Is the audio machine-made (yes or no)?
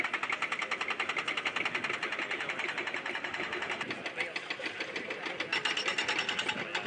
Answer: no